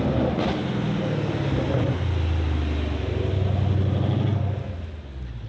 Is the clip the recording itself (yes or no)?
yes